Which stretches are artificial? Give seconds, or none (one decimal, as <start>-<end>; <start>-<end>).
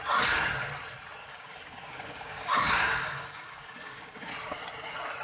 1.2-4.3